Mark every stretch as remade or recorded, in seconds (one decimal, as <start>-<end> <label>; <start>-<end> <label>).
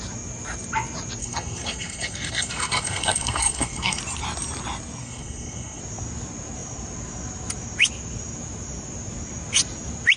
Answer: 0.0-1.2 recorded; 1.2-4.0 remade; 4.0-5.0 recorded; 5.0-5.8 remade; 5.8-10.2 recorded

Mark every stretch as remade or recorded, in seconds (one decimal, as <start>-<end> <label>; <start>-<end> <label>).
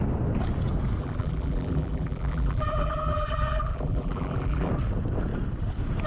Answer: 0.0-1.0 recorded; 1.0-4.7 remade; 4.7-6.1 recorded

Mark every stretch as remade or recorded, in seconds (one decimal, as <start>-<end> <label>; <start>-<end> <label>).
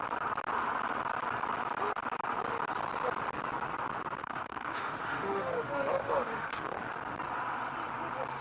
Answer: 0.0-4.2 recorded; 4.2-6.8 remade; 6.8-8.4 recorded